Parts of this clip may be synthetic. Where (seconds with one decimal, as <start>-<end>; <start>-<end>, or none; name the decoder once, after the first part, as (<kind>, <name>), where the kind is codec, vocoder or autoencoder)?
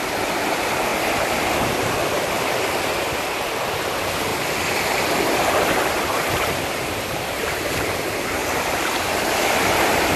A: 4.3-7.7 (vocoder, BigVGAN v2)